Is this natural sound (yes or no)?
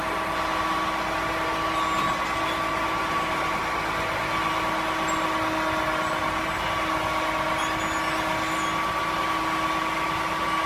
yes